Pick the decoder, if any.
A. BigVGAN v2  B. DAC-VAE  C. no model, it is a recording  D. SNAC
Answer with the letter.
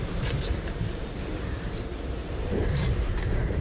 A